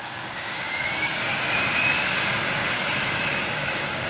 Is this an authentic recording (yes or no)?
no